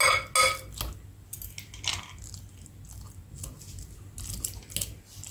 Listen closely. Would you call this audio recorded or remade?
recorded